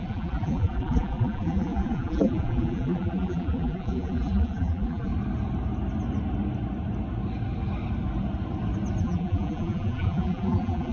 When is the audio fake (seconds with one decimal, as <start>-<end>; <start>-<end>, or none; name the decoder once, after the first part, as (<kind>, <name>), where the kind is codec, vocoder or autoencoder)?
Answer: 0.0-5.1 (vocoder, BigVGAN v2); 9.0-10.9